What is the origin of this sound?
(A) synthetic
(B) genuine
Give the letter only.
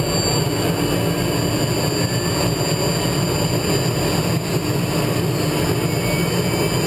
B